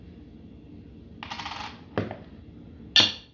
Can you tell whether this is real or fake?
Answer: real